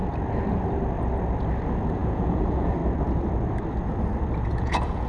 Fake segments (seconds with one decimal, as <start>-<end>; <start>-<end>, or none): 1.9-2.8; 4.4-5.1